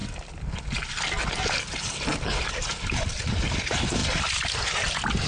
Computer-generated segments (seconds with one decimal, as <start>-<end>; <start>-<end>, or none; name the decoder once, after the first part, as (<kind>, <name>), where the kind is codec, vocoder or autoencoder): 3.2-4.0 (vocoder, BigVGAN v2)